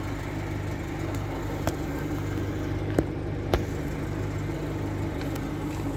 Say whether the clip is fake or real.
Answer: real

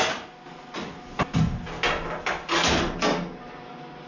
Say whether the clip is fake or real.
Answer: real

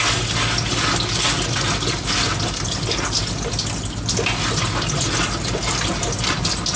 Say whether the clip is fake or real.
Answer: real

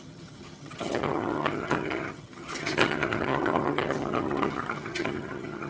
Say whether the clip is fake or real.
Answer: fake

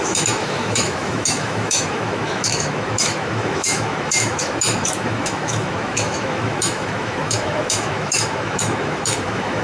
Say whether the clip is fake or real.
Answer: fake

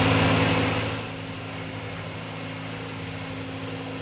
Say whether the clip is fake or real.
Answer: real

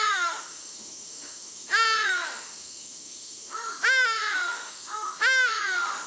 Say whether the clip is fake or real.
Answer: fake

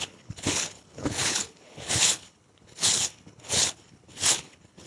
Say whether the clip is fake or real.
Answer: fake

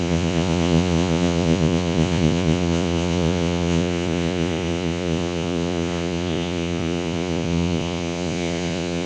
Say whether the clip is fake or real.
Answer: fake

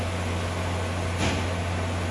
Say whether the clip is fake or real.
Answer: real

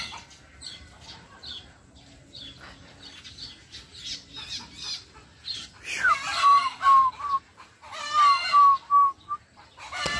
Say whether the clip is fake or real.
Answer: real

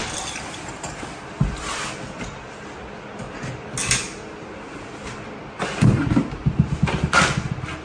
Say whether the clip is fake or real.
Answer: real